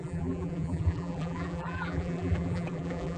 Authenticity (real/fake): fake